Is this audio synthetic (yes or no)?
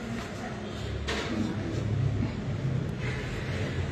no